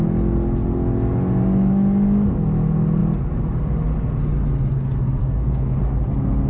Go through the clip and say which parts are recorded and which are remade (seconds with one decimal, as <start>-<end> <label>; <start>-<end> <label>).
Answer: 0.0-5.2 recorded; 5.2-5.8 remade; 5.8-6.5 recorded